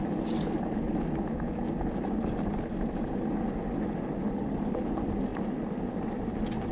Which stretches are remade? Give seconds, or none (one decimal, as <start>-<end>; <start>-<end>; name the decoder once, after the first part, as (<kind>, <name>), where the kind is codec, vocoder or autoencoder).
none